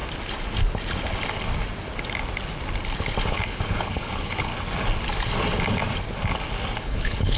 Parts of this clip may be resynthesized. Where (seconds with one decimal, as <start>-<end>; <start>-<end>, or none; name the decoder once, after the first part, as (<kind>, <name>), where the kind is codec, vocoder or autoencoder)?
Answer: 3.3-4.5 (codec, HILCodec); 6.8-7.4